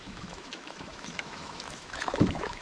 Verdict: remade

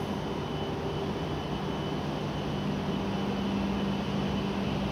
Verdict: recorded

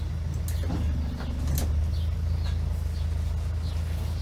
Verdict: recorded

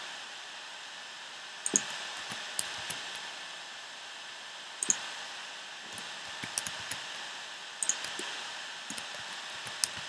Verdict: recorded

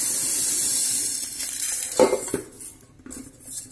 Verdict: recorded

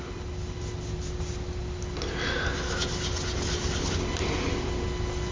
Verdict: recorded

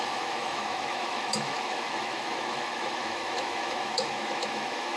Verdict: remade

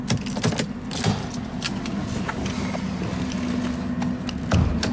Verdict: recorded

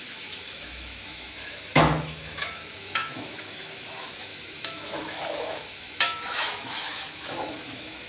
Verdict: remade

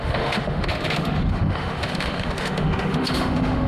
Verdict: remade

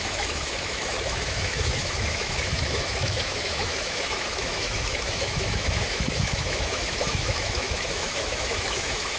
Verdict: remade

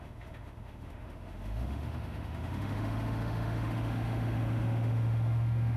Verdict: remade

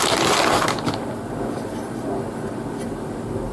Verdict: recorded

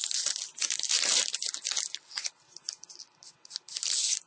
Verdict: recorded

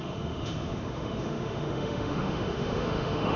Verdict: remade